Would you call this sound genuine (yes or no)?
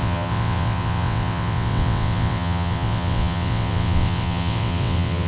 no